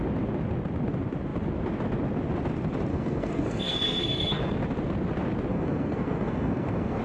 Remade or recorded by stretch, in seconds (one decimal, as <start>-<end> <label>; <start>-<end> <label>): 0.0-2.9 recorded; 2.9-4.4 remade; 4.4-5.5 recorded; 5.5-7.0 remade

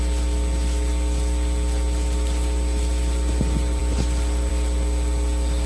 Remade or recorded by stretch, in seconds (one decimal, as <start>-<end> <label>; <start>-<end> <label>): 0.0-5.7 recorded

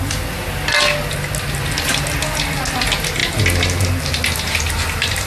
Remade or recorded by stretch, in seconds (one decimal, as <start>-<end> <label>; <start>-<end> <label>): 0.0-5.3 recorded

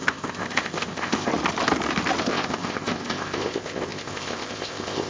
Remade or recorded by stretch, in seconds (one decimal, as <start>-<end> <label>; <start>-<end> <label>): 0.0-1.3 remade; 1.3-2.2 recorded; 2.2-5.1 remade

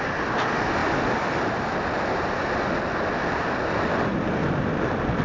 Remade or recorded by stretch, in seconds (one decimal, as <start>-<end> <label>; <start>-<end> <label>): 0.0-4.1 recorded; 4.1-4.6 remade; 4.6-5.2 recorded

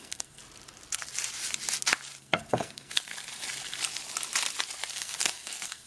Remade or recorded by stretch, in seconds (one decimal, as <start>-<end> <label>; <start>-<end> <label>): 0.0-0.4 remade; 0.4-2.2 recorded; 2.2-3.1 remade; 3.1-4.9 recorded; 4.9-5.9 remade

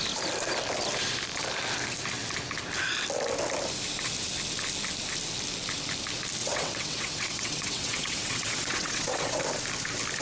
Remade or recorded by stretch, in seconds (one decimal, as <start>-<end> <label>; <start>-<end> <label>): 0.0-6.4 recorded; 6.4-9.4 remade; 9.4-10.2 recorded

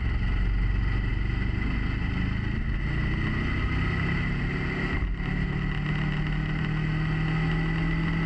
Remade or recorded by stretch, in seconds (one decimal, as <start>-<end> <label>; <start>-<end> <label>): 0.0-8.3 recorded